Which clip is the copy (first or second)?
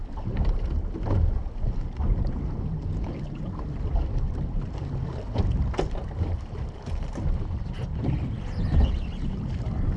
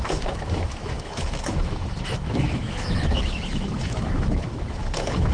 second